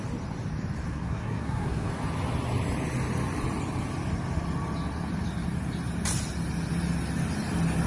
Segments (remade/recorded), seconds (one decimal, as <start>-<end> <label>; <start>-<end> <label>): 0.0-0.9 recorded; 0.9-1.9 remade; 1.9-7.9 recorded